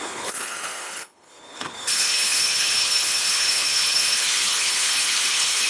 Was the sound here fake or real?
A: fake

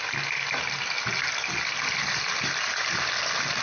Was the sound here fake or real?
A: real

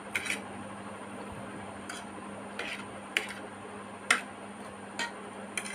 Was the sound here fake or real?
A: real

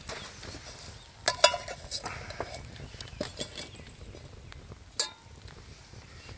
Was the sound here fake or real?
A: real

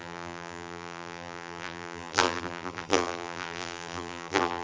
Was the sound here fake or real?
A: fake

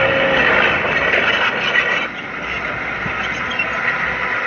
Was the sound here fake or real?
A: real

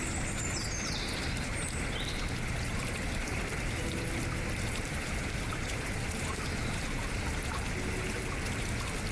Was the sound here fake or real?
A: real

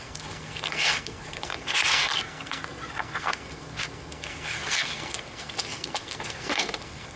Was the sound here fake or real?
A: fake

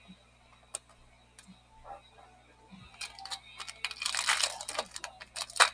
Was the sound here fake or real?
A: real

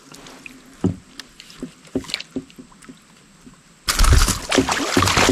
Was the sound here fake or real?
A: real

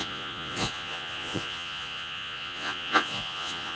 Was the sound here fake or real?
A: fake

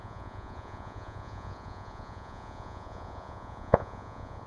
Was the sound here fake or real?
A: fake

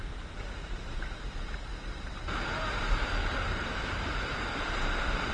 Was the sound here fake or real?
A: fake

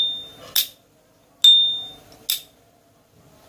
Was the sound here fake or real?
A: real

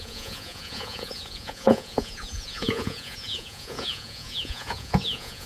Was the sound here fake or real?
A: fake